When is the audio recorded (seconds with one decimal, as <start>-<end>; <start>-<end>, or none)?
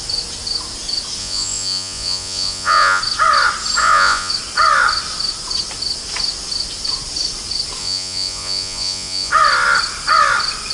0.0-1.2; 3.0-3.8; 4.3-7.8; 9.3-10.7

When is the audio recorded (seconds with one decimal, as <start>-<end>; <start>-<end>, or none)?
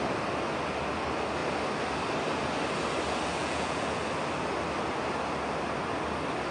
0.0-3.4; 4.0-6.5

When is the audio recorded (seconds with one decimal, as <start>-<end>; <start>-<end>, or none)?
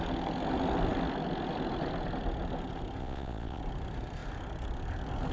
0.0-3.0; 3.6-5.3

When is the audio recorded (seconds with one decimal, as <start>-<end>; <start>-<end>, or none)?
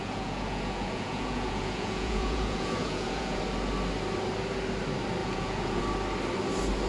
3.4-5.2; 5.8-6.9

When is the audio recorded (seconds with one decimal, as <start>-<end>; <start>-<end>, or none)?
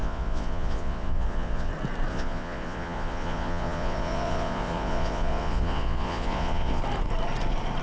1.7-2.1; 6.8-7.8